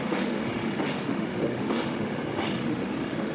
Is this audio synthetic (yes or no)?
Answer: yes